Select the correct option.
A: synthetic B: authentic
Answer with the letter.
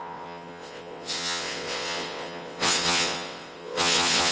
A